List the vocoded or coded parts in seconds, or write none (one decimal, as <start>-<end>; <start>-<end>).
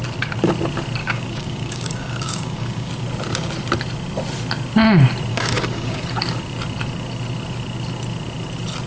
1.0-2.9; 5.3-6.0